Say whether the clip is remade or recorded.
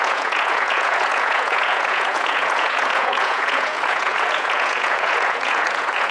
remade